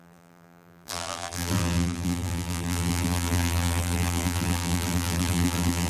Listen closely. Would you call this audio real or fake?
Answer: fake